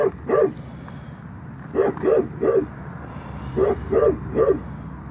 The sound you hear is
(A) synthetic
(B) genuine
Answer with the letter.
B